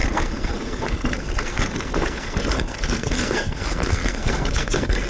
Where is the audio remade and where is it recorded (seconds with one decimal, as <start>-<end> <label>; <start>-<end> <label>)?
0.0-5.1 remade